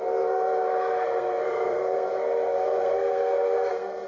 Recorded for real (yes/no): no